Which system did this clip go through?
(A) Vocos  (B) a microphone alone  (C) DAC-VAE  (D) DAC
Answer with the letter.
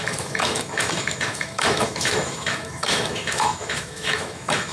C